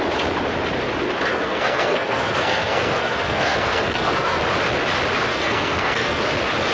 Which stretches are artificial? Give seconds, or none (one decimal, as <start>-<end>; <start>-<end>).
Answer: 1.3-4.4; 5.3-6.2